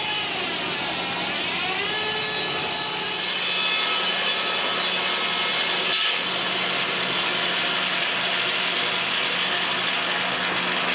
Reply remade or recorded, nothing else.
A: recorded